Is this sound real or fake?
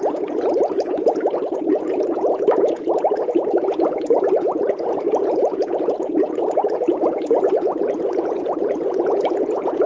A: fake